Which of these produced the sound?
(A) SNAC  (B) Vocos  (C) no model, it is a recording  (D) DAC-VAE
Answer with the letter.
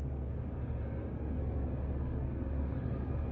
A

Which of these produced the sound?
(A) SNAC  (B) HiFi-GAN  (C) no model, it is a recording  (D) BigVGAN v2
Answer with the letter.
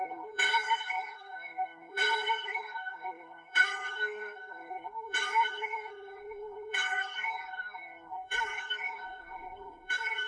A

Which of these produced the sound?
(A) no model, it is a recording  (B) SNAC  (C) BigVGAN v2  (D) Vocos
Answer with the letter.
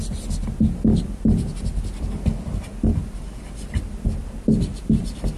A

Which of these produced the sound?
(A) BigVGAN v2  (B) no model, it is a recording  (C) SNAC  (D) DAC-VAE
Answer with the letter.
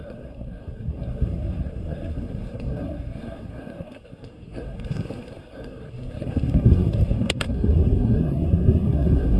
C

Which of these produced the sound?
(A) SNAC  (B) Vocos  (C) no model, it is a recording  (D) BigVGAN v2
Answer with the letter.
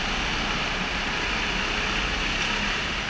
C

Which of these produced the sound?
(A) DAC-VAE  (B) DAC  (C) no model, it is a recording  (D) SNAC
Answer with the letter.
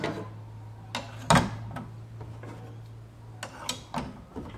C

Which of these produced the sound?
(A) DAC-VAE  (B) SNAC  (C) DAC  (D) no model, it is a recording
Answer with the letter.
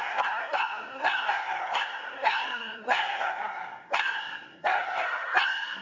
B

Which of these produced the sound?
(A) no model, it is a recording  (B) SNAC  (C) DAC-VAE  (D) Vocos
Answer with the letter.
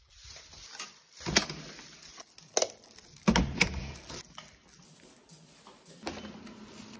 A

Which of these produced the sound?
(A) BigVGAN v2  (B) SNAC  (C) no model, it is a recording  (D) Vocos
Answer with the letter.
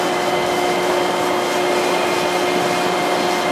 C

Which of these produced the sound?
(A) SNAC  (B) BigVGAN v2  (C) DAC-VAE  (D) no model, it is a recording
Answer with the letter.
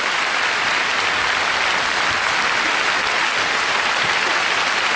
D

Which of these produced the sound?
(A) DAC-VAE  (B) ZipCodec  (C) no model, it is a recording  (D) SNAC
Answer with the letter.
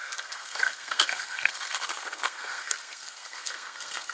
D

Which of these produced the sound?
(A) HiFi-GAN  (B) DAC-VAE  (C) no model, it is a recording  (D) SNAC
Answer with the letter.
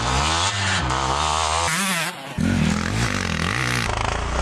C